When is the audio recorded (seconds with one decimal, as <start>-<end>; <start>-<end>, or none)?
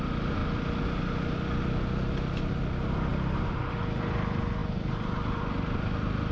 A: 0.0-3.1; 3.8-4.6; 5.4-6.3